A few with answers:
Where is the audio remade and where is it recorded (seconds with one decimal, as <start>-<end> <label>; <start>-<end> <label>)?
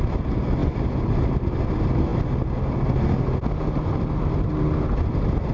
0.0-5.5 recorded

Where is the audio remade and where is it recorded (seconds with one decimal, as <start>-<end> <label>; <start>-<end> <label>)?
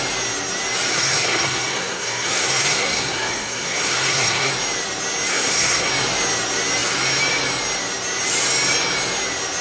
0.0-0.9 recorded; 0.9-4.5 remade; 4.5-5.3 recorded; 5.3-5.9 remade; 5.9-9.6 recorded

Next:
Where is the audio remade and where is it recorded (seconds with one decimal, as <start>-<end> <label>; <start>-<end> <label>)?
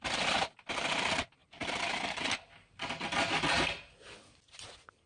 0.0-5.1 recorded